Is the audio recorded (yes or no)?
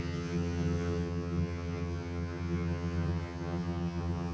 no